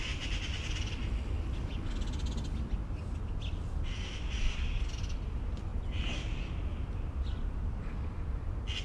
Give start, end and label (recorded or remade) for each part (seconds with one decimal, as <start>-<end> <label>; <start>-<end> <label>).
0.0-8.8 recorded